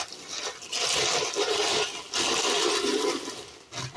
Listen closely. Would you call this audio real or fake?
real